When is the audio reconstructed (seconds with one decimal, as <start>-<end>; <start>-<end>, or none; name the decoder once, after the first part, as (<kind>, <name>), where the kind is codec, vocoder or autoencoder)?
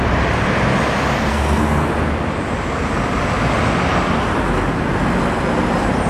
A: 1.3-1.9 (codec, SNAC)